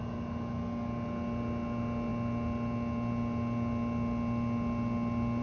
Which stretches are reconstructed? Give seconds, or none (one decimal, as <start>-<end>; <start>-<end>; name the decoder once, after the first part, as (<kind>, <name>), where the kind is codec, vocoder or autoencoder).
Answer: none

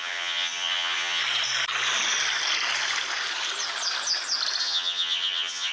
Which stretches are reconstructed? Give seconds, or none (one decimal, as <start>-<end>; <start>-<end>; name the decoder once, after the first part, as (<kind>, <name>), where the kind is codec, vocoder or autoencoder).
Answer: 0.0-1.2 (vocoder, HiFi-GAN); 4.6-5.7

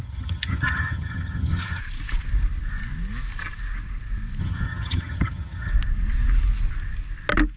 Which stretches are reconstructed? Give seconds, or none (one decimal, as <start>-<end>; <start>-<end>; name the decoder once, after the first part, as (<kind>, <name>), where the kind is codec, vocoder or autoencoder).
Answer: 0.0-1.8 (vocoder, HiFi-GAN); 4.4-5.7

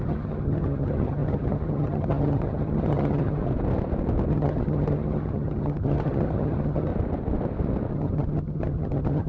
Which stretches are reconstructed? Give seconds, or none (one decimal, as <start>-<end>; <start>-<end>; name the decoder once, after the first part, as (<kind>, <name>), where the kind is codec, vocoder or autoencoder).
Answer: 0.0-3.5 (vocoder, HiFi-GAN); 4.3-6.9; 7.9-9.3

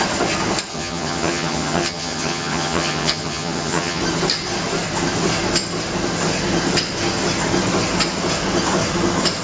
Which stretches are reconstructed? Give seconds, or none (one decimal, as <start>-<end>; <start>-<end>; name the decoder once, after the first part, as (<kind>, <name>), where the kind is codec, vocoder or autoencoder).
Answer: 0.7-4.0 (vocoder, HiFi-GAN)

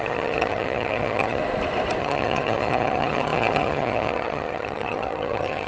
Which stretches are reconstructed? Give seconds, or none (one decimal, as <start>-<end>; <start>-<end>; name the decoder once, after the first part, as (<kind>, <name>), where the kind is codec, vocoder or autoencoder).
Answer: 0.0-1.4 (vocoder, HiFi-GAN); 2.0-5.7